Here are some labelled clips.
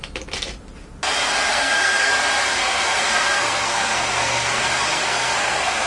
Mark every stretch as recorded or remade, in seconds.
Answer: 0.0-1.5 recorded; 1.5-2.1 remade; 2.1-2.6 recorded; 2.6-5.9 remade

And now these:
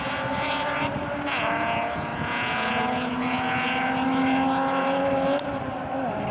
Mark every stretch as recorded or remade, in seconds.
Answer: 0.0-6.3 recorded

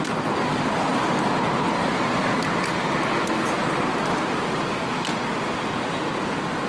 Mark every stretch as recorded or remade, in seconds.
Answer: 0.0-6.7 recorded

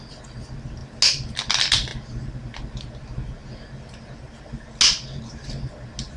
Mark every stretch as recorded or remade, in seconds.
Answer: 0.0-6.2 recorded

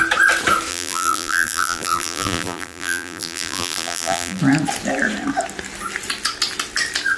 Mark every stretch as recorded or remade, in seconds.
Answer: 0.0-0.7 recorded; 0.7-4.4 remade; 4.4-7.2 recorded

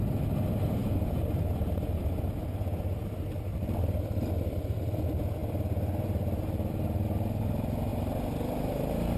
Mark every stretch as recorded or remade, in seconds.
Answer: 0.0-9.2 recorded